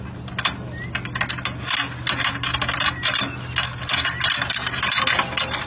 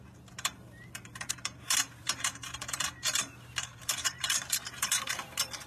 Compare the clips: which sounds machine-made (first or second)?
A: second